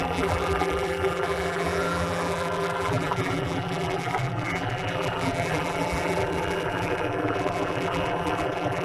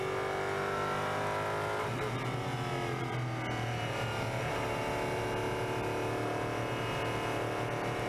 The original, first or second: second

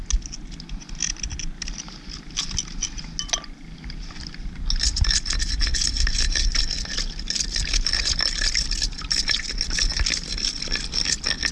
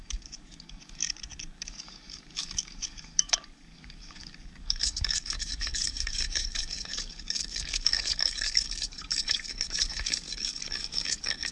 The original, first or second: first